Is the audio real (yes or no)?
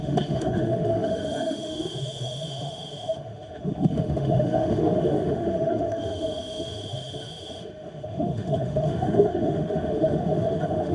no